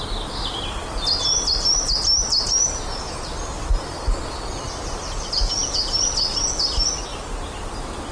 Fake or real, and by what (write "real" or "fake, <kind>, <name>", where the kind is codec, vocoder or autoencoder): real